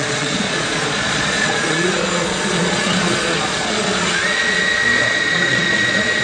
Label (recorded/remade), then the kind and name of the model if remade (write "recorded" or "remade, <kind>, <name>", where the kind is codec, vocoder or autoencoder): remade, vocoder, Vocos